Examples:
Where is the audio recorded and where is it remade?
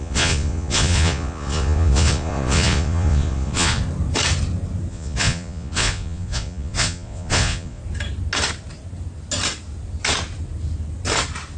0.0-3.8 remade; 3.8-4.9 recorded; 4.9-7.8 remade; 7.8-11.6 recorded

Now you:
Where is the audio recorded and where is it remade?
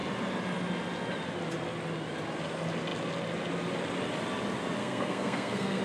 0.0-4.8 recorded; 4.8-5.8 remade